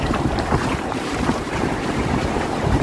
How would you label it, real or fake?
fake